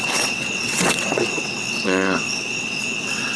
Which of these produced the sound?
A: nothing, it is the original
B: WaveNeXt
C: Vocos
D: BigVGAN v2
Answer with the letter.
B